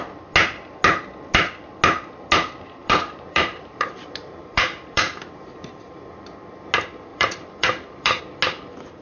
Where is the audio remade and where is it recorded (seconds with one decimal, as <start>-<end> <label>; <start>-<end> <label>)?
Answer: 0.0-2.8 recorded; 2.8-6.0 remade; 6.0-7.1 recorded; 7.1-8.2 remade; 8.2-9.0 recorded